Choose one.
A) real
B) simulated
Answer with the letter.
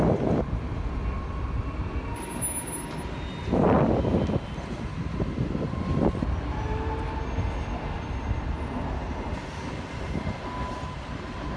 A